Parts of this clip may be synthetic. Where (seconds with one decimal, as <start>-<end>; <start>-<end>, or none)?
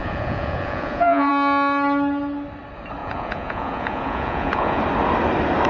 0.0-1.3; 3.0-4.8